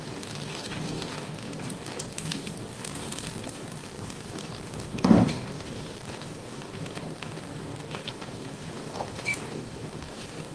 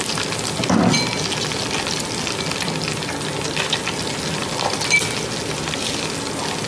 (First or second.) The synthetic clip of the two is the first